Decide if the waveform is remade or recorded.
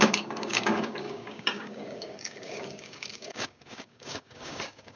remade